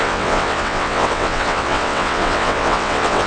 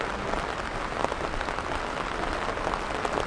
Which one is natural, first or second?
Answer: second